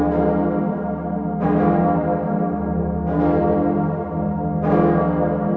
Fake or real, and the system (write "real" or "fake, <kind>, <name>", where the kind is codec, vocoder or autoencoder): real